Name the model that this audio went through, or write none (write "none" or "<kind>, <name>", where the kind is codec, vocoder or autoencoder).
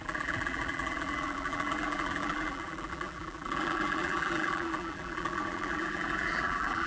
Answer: vocoder, BigVGAN v2